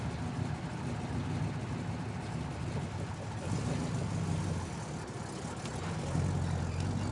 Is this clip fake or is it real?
real